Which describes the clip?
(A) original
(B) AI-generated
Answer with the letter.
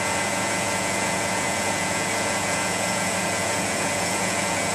B